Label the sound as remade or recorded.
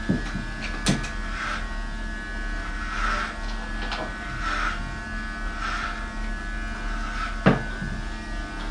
recorded